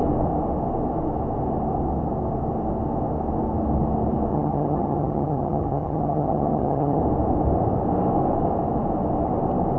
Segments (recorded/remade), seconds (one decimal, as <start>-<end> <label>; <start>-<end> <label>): 0.0-4.3 recorded; 4.3-7.0 remade; 7.0-9.8 recorded